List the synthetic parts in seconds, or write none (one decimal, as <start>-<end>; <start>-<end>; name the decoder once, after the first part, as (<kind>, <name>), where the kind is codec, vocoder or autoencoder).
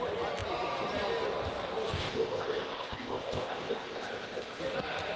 2.0-4.6 (codec, ZipCodec)